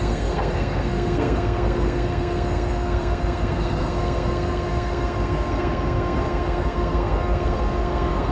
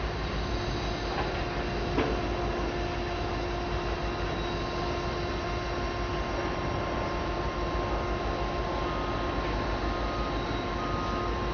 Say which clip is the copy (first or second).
first